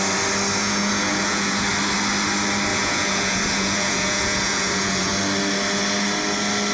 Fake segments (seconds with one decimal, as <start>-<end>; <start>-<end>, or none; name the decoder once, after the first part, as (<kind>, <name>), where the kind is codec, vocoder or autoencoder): 0.6-1.6 (vocoder, Vocos); 2.7-5.1